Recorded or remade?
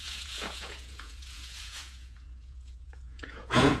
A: remade